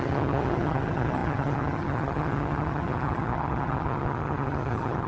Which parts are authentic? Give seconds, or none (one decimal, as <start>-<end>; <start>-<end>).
none